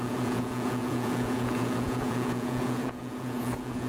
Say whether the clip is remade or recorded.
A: remade